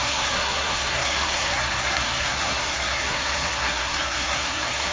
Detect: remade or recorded remade